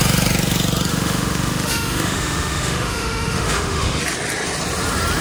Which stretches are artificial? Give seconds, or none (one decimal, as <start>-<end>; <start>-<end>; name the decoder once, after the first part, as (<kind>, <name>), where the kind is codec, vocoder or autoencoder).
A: 0.9-4.0 (autoencoder, DAC-VAE)